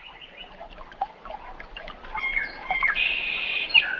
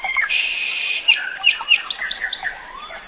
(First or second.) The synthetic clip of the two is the second